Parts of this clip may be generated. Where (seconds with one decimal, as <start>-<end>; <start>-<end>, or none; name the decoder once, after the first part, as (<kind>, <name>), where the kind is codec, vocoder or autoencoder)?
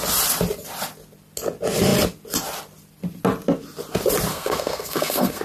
4.3-5.4 (codec, SNAC)